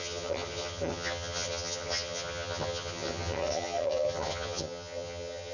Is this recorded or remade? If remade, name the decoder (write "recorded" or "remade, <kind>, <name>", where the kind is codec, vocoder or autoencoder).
remade, vocoder, HiFi-GAN